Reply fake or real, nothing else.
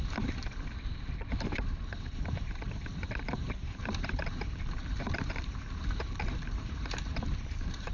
fake